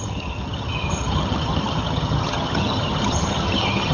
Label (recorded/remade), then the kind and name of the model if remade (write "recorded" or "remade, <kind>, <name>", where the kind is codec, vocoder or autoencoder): remade, vocoder, HiFi-GAN